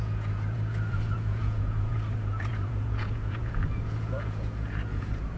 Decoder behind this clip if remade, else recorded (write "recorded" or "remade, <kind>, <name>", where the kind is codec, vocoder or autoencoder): remade, vocoder, Vocos